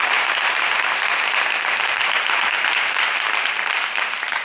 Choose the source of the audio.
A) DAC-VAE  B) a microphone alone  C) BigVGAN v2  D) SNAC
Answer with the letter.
C